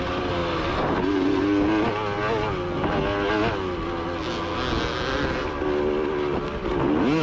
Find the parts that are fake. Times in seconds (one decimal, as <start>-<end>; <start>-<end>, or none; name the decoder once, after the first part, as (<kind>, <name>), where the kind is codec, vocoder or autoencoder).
none